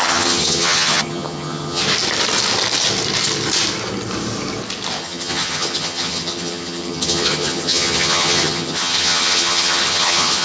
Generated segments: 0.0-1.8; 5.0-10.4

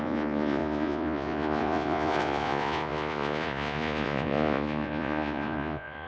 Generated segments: 0.0-6.1

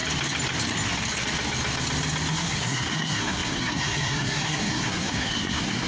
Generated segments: 2.3-5.9